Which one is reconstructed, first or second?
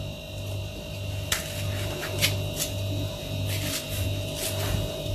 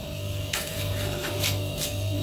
second